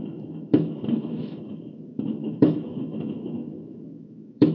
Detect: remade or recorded remade